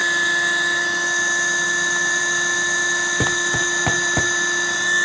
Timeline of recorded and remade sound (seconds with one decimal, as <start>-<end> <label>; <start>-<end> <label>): 0.0-5.0 recorded

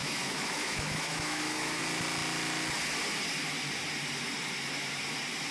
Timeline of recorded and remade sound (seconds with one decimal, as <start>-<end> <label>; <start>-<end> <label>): 0.0-1.8 remade; 1.8-5.5 recorded

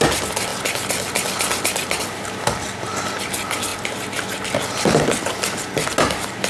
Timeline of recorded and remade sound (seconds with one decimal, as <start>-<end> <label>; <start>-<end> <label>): 0.0-6.5 recorded